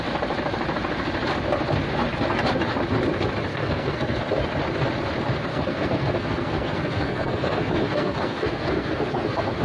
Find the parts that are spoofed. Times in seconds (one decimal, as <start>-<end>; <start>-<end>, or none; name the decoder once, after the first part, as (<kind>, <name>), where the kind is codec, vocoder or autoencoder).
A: 3.5-4.2 (codec, SNAC); 5.5-9.6